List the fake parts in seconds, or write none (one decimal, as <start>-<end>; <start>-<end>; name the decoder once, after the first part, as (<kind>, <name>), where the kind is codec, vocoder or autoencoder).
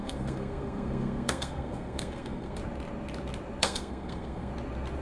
0.0-2.6 (codec, SNAC); 3.6-4.5